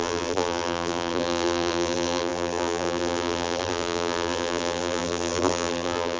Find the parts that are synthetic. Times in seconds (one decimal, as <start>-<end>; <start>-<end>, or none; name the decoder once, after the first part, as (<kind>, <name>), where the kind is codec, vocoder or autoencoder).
0.0-6.2 (vocoder, BigVGAN v2)

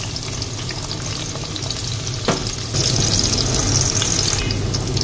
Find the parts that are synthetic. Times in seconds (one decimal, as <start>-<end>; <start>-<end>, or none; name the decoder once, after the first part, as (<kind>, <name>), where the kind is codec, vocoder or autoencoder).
none